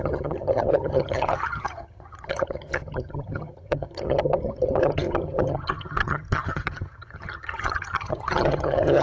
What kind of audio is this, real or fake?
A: fake